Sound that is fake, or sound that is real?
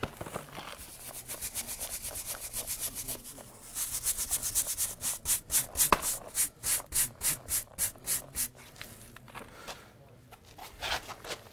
real